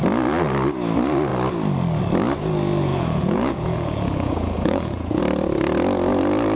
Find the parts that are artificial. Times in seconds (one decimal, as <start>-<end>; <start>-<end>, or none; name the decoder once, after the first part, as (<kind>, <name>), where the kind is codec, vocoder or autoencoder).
2.9-5.2 (vocoder, Vocos)

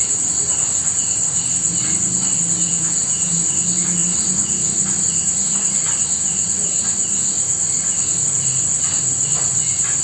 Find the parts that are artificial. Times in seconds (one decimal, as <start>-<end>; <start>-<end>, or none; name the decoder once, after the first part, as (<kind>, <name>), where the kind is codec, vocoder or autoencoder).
2.7-3.3 (vocoder, Vocos)

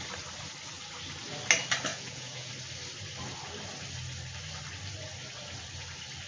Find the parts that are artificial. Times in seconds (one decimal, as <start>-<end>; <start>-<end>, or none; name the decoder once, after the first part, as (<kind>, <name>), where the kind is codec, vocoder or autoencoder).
1.9-2.5 (vocoder, Vocos)

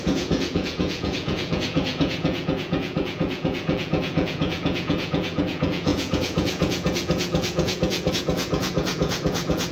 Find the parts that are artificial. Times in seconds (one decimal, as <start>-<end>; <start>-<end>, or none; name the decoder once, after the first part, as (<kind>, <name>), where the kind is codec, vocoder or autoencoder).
0.0-9.7 (vocoder, Vocos)